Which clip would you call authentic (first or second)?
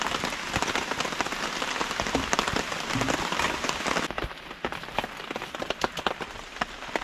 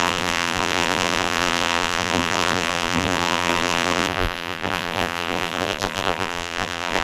first